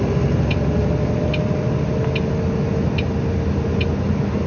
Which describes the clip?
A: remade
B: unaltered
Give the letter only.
B